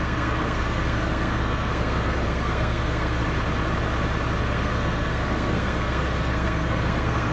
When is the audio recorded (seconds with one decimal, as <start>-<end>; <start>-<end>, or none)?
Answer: 3.2-4.4